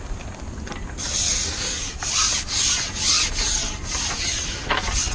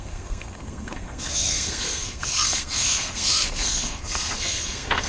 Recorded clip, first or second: first